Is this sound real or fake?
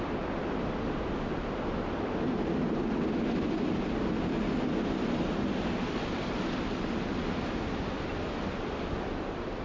real